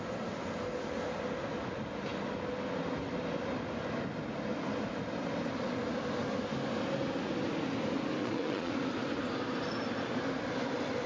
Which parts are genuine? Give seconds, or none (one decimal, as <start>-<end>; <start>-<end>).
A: 0.0-8.2; 8.7-11.1